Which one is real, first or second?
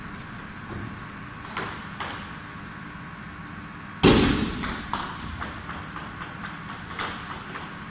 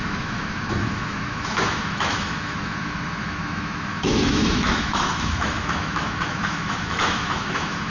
first